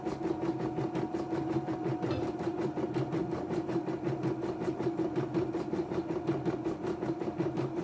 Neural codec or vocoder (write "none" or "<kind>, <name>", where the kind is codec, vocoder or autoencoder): none